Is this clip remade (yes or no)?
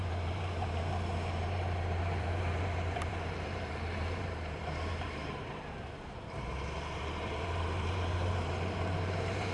yes